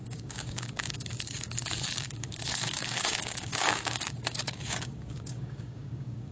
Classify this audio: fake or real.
fake